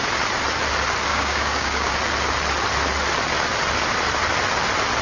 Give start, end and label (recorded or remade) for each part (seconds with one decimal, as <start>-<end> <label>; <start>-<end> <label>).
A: 0.0-1.1 recorded; 1.1-1.9 remade; 1.9-5.0 recorded